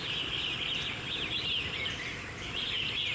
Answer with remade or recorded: recorded